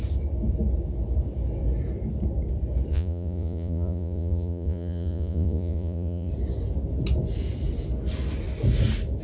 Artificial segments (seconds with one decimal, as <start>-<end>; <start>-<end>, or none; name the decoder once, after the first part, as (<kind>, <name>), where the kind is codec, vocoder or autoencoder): 2.9-6.3 (vocoder, Vocos)